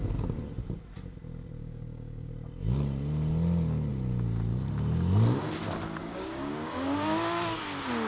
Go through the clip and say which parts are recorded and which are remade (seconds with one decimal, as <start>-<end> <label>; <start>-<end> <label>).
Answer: 0.0-1.6 recorded; 1.6-2.3 remade; 2.3-6.0 recorded; 6.0-7.6 remade; 7.6-8.1 recorded